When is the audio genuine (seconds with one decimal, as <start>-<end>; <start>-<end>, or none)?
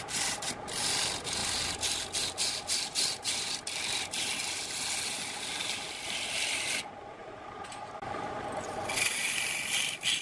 0.0-7.2; 7.9-10.2